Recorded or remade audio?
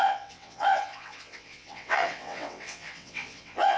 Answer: remade